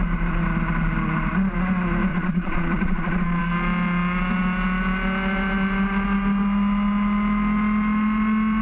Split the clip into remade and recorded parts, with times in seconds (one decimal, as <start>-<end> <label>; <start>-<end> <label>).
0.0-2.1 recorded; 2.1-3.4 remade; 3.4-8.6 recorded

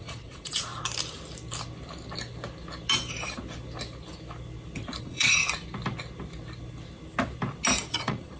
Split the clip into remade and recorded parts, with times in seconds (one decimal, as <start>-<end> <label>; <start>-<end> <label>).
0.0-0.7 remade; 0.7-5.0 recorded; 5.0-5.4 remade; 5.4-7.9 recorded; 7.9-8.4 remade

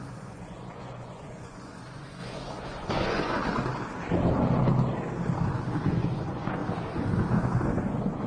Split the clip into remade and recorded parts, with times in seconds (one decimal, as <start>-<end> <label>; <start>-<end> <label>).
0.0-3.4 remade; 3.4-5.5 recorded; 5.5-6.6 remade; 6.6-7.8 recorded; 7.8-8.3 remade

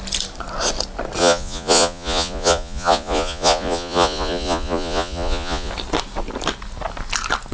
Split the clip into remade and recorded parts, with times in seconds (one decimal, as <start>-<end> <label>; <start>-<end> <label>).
0.0-1.2 recorded; 1.2-5.7 remade; 5.7-7.5 recorded